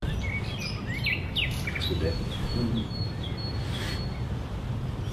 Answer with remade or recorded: recorded